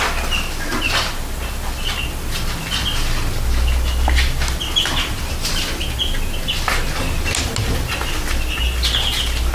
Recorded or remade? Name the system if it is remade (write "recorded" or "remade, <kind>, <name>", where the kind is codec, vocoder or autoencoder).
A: recorded